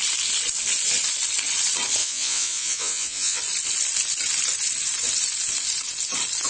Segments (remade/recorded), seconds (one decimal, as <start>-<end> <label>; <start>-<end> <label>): 0.0-2.0 recorded; 2.0-3.4 remade; 3.4-6.5 recorded